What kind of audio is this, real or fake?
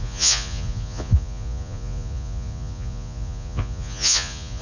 fake